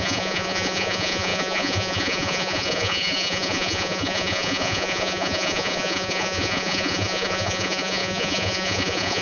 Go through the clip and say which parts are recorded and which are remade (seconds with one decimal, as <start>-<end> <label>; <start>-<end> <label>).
0.0-9.2 remade